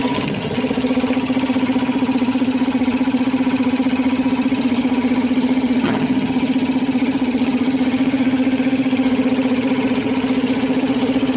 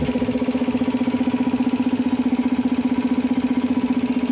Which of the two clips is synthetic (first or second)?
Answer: first